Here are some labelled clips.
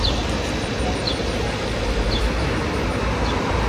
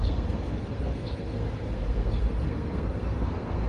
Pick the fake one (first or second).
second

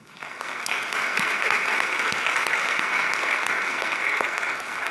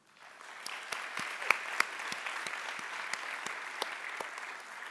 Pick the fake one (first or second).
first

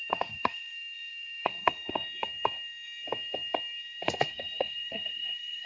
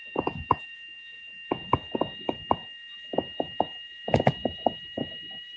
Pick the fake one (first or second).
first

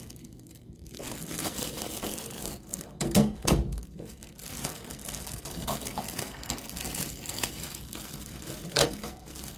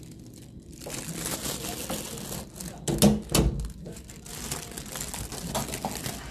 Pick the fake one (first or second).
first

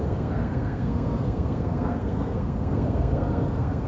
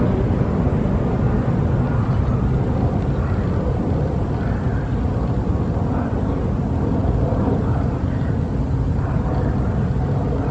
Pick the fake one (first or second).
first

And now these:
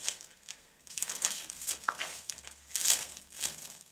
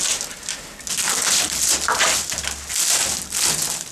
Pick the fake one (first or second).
first